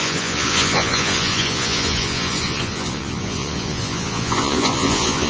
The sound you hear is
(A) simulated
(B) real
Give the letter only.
A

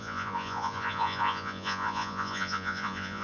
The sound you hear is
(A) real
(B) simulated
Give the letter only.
B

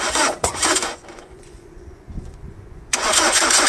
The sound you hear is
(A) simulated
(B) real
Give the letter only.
A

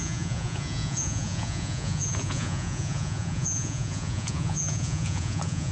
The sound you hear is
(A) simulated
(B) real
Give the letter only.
A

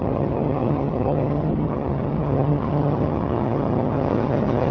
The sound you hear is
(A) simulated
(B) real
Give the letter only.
A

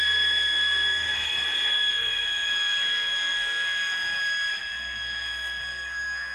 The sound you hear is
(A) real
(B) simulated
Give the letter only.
B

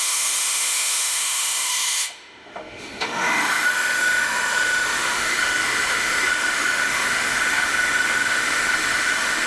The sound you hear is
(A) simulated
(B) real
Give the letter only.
A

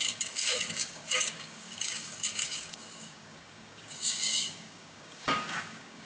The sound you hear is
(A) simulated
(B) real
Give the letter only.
A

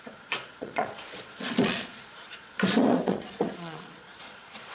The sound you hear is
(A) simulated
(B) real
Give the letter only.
A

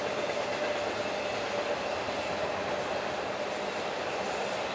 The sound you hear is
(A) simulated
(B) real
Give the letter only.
B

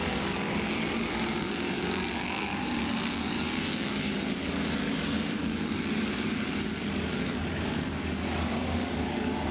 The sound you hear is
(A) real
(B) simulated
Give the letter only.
B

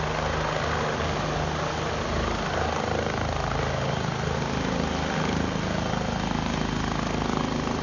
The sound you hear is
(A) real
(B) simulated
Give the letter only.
A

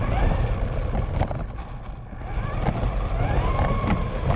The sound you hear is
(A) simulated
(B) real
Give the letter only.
B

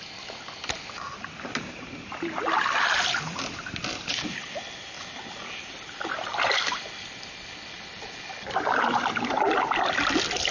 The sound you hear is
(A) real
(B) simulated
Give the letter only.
A